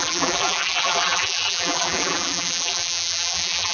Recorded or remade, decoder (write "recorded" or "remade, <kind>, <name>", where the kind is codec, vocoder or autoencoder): remade, vocoder, BigVGAN v2